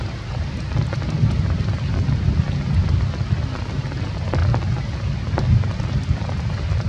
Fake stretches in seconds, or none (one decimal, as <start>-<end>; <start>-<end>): none